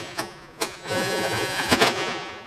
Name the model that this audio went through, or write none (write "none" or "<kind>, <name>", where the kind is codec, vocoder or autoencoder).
vocoder, Vocos